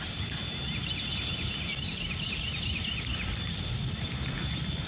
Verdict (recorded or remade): recorded